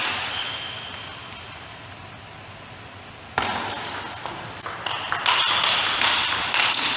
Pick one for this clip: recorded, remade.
recorded